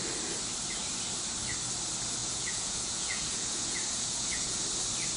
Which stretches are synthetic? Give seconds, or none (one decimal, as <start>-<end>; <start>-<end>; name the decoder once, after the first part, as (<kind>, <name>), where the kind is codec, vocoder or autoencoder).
2.2-4.6 (vocoder, Vocos)